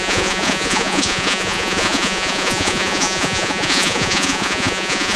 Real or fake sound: fake